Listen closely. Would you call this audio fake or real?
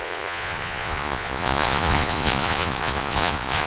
fake